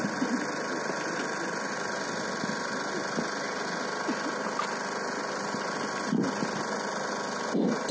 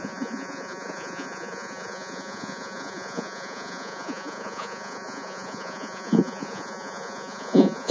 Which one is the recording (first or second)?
first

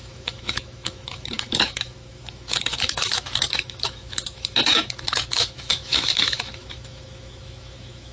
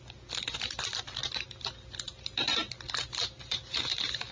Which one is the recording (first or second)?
second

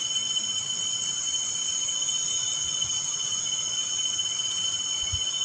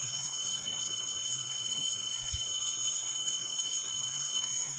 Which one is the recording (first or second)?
first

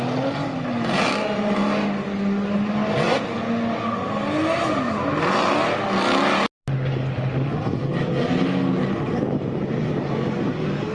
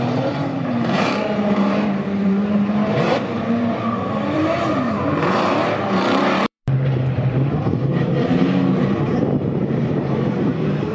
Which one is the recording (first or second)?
first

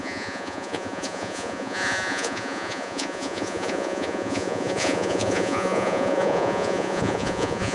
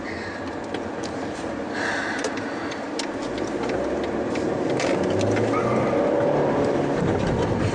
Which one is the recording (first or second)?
second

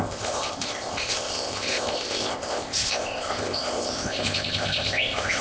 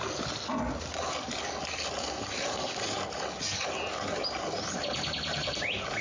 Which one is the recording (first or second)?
second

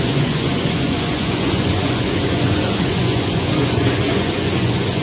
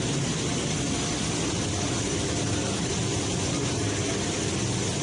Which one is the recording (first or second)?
second